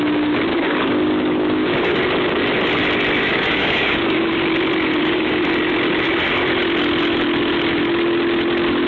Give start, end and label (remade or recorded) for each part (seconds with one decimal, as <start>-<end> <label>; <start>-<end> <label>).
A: 0.0-0.5 recorded; 0.5-2.0 remade; 2.0-3.3 recorded; 3.3-4.3 remade; 4.3-4.9 recorded; 4.9-5.5 remade; 5.5-8.9 recorded